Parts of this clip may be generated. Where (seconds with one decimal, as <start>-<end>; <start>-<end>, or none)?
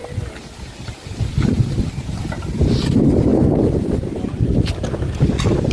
none